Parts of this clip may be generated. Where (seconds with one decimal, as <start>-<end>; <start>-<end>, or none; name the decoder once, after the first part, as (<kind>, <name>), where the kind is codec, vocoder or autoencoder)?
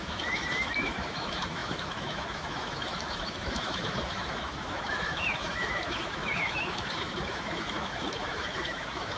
0.0-9.2 (autoencoder, DAC-VAE)